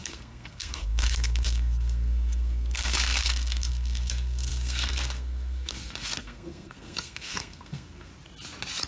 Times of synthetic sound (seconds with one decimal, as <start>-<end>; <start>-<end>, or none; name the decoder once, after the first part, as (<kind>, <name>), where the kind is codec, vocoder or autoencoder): 0.0-8.1 (codec, SNAC)